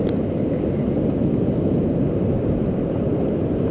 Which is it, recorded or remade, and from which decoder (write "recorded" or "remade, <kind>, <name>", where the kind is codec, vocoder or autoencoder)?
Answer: recorded